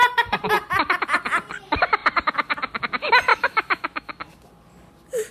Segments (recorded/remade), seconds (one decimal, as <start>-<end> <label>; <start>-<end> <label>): 0.0-3.3 recorded; 3.3-4.1 remade; 4.1-5.3 recorded